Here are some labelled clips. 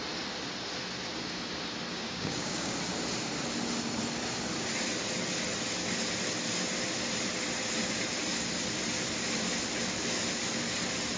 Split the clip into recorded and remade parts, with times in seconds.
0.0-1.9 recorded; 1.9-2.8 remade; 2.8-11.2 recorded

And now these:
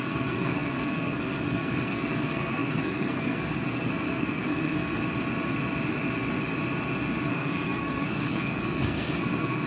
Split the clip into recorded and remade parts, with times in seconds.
0.0-5.0 remade; 5.0-7.3 recorded; 7.3-9.7 remade

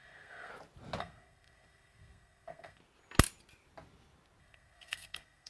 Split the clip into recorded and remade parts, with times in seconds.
0.0-0.5 remade; 0.5-1.0 recorded; 1.0-2.8 remade; 2.8-4.4 recorded; 4.4-5.5 remade

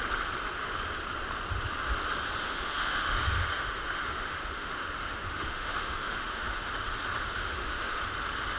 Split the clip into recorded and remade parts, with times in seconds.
0.0-2.4 recorded; 2.4-6.7 remade; 6.7-7.4 recorded; 7.4-8.0 remade; 8.0-8.6 recorded

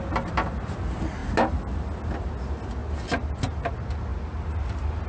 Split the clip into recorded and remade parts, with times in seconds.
0.0-5.1 recorded